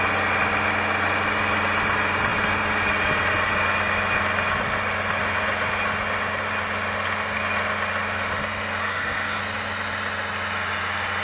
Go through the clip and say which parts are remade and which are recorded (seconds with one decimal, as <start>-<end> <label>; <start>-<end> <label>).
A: 0.0-8.8 recorded; 8.8-9.4 remade; 9.4-11.2 recorded